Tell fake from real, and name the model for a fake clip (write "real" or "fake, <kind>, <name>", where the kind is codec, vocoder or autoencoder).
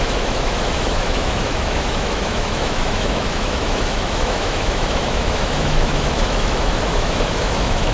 fake, autoencoder, DAC-VAE